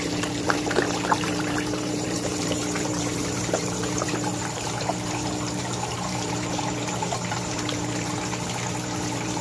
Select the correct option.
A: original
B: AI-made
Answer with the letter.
B